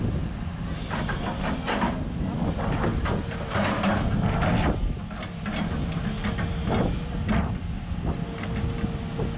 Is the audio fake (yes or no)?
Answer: no